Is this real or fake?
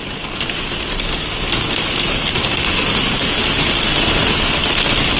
real